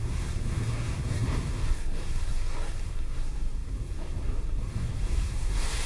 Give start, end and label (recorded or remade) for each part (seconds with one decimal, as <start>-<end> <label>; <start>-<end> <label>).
0.0-5.9 remade